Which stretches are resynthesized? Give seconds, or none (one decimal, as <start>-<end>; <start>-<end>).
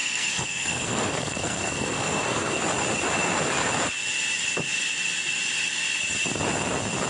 0.0-2.6